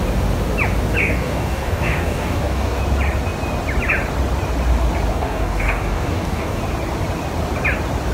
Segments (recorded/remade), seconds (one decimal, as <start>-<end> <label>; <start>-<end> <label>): 0.0-1.0 recorded; 1.0-2.8 remade; 2.8-5.1 recorded; 5.1-6.6 remade; 6.6-8.1 recorded